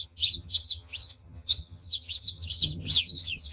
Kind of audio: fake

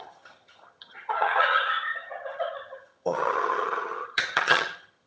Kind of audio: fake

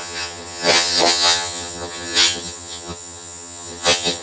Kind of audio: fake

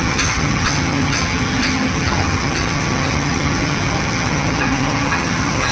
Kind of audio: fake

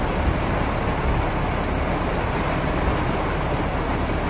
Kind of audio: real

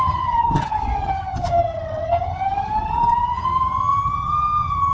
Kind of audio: fake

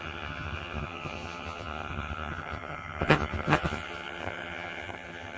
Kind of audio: fake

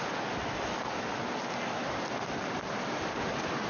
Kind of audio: real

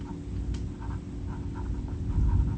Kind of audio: real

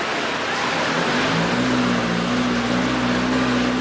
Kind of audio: real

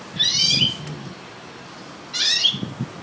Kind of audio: real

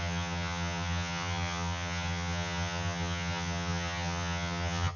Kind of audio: fake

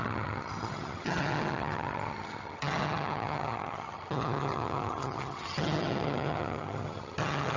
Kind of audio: fake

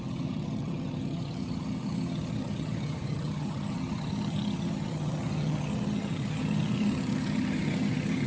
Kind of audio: fake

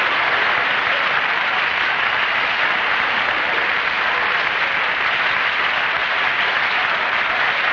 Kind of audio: real